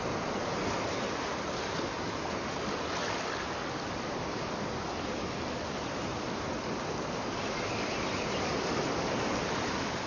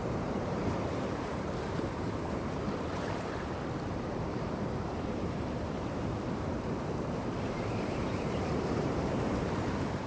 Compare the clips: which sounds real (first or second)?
first